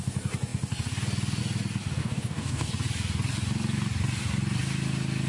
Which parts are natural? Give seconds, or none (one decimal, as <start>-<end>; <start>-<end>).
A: 0.0-2.0; 2.7-5.3